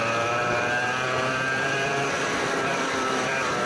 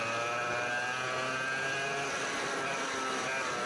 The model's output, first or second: first